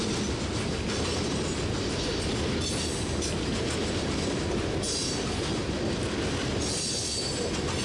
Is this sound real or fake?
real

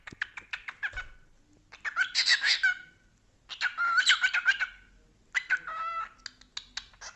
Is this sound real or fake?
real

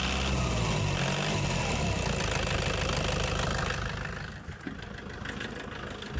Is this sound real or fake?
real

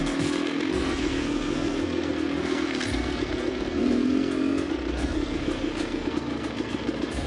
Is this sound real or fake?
fake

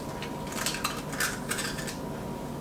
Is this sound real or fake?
real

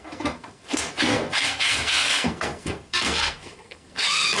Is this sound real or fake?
fake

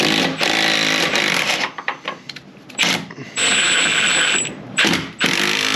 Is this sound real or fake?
real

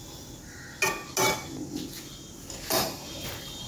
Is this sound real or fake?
real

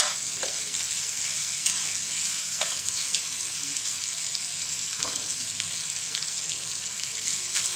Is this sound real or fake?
fake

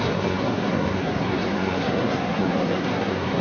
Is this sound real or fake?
fake